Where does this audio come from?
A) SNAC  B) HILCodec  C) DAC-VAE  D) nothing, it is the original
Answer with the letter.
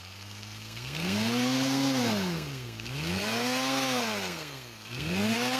A